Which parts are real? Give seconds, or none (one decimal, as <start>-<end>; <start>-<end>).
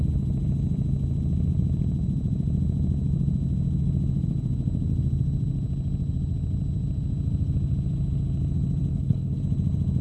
0.0-8.9; 9.4-10.0